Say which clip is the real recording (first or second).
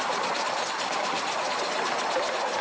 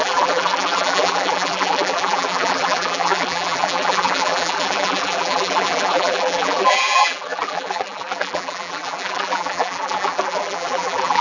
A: first